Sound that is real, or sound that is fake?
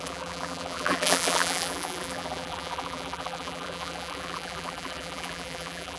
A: fake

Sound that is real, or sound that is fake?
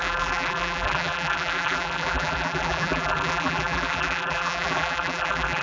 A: fake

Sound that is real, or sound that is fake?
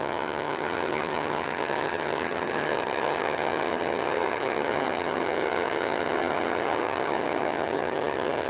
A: fake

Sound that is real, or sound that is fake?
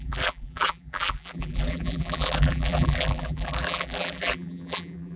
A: fake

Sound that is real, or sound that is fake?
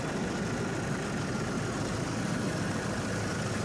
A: real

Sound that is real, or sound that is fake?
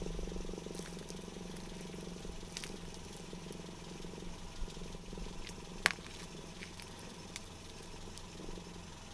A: real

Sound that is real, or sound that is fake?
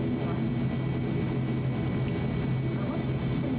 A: real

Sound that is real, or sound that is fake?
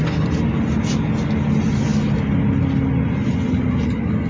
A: real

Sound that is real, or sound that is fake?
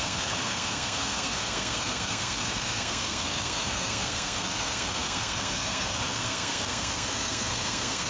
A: fake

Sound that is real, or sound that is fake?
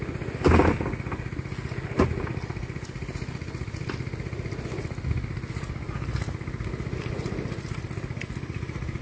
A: real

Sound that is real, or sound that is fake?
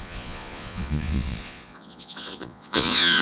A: fake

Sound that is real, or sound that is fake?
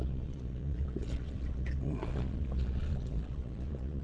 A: fake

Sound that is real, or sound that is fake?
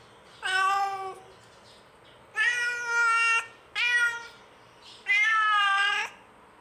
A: real